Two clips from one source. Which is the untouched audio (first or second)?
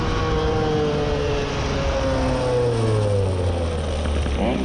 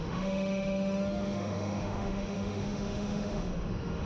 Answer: first